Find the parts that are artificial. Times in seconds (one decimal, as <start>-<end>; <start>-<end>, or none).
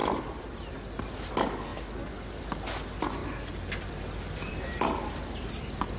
none